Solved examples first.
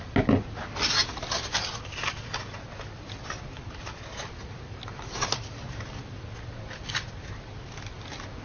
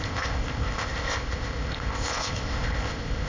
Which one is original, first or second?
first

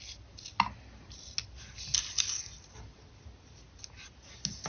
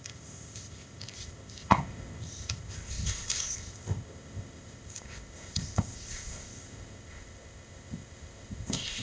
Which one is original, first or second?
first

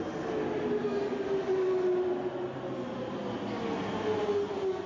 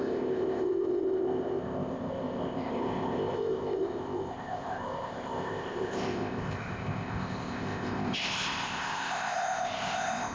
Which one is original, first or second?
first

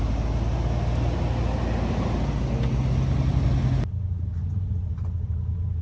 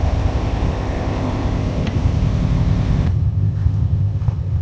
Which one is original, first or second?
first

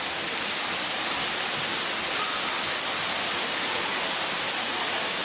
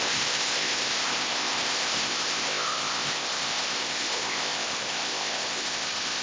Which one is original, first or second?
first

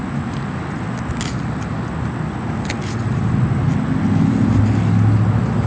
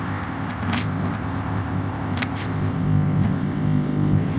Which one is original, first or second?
first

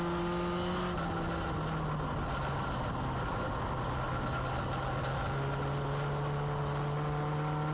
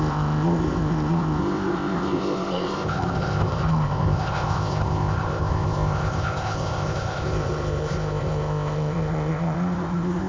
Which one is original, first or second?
first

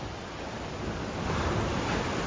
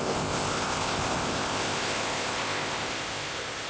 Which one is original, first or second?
first